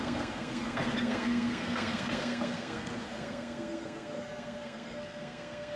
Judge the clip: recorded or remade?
remade